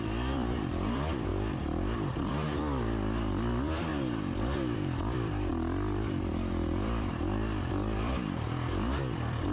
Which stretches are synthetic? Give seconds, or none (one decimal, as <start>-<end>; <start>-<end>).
0.0-1.3; 2.3-9.5